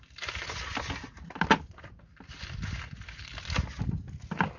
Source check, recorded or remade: recorded